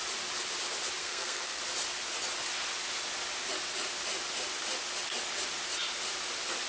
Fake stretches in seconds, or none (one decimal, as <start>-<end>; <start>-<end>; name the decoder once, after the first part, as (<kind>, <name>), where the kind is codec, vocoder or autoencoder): 1.0-1.6 (codec, SNAC)